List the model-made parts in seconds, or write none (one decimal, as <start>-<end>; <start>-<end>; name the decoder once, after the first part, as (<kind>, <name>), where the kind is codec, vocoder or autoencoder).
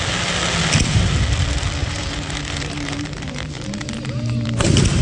1.8-5.0 (vocoder, BigVGAN v2)